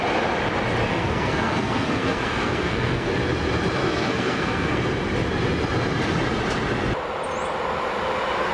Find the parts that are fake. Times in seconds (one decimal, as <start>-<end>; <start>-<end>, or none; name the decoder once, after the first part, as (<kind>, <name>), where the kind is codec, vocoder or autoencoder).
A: 0.9-3.1 (codec, SNAC); 3.8-4.8